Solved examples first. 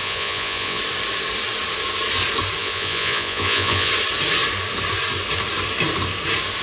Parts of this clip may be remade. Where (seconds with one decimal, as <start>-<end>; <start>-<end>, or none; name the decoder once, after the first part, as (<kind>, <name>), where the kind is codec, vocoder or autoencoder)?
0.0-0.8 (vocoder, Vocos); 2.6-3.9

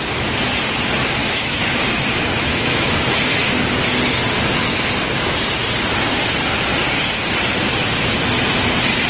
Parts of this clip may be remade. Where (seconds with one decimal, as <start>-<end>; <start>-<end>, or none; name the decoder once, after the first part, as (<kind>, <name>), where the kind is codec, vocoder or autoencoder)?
1.2-3.2 (autoencoder, DAC-VAE)

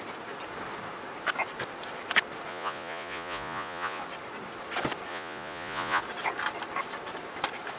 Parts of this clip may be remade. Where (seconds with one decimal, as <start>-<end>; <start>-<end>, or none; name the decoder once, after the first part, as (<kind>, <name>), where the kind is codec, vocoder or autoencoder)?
2.5-4.0 (vocoder, Vocos); 5.1-6.0

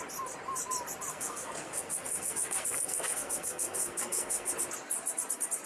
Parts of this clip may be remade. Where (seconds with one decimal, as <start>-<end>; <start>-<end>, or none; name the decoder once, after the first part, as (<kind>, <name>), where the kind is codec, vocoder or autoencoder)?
1.1-4.5 (codec, SNAC)

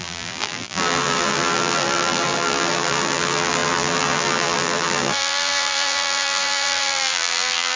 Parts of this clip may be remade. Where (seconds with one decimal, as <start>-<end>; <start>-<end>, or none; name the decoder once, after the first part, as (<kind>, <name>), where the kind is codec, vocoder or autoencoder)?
0.0-7.8 (vocoder, BigVGAN v2)

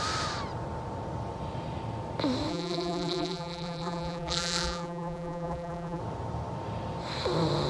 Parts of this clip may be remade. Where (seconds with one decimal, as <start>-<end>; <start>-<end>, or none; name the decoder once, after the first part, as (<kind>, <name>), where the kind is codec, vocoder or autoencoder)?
2.5-6.0 (vocoder, BigVGAN v2)

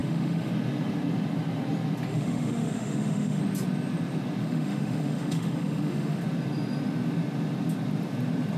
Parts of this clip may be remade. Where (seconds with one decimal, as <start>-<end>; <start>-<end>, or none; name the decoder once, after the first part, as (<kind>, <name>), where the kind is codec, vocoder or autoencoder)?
0.0-0.5 (autoencoder, DAC-VAE); 2.1-3.4; 4.4-6.2

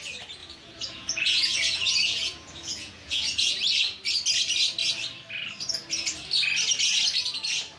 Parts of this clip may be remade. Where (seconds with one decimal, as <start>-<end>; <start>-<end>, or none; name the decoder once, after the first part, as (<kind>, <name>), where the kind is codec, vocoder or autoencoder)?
0.4-3.5 (vocoder, Vocos)